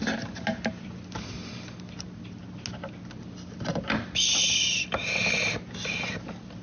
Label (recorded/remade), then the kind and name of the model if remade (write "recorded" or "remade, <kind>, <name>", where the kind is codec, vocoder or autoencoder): recorded